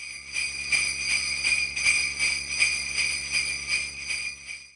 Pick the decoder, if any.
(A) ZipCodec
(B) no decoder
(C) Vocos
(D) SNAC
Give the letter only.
B